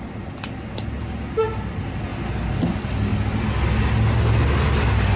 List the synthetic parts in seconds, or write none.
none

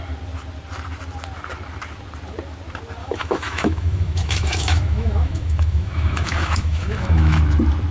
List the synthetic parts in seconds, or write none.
3.0-7.4 (autoencoder, DAC-VAE)